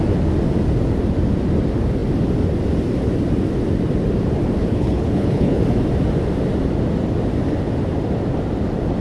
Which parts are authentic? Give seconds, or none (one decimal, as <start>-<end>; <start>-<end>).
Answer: 0.0-4.6; 5.6-9.0